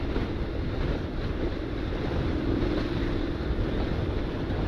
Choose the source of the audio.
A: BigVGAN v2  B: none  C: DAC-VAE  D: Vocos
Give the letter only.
A